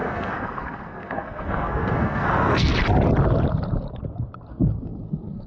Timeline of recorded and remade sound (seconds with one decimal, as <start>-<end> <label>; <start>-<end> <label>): 0.0-2.7 remade; 2.7-4.5 recorded; 4.5-5.5 remade